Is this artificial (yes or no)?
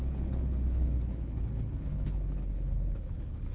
yes